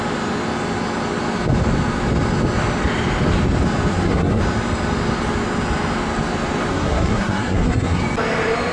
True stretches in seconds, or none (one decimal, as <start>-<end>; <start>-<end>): 0.0-3.9; 4.4-6.7; 8.0-8.7